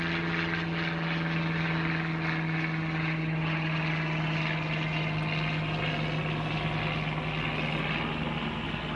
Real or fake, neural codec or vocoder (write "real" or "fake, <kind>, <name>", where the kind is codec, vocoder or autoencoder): real